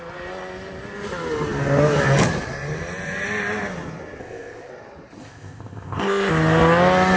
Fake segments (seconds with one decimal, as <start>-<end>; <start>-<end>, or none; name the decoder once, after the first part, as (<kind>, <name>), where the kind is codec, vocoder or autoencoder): 4.2-4.7 (codec, ZipCodec); 5.2-6.3